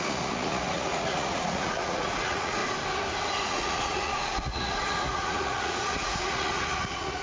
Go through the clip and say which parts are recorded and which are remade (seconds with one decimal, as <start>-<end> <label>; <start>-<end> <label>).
0.0-2.6 remade; 2.6-3.4 recorded; 3.4-7.2 remade